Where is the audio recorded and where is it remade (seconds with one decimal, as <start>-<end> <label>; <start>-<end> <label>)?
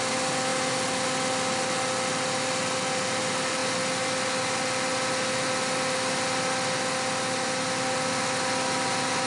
0.0-9.3 recorded